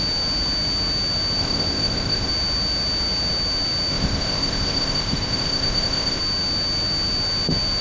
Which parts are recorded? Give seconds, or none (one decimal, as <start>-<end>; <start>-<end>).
0.0-1.4; 2.3-3.9; 6.2-7.8